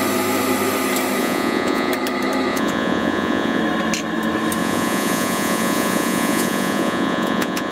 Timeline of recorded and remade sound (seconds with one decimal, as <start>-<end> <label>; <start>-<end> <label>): 0.0-1.2 recorded; 1.2-1.9 remade; 1.9-2.5 recorded; 2.5-3.6 remade; 3.6-4.6 recorded; 4.6-7.7 remade